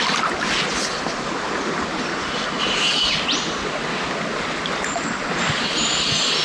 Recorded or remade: recorded